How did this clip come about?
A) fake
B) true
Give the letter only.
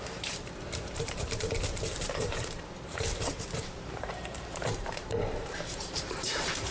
A